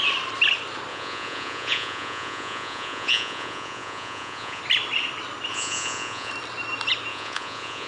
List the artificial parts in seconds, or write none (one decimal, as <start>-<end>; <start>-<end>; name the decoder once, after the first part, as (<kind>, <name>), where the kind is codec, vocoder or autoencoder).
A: 0.9-4.6 (vocoder, Vocos); 5.5-6.3; 7.1-7.9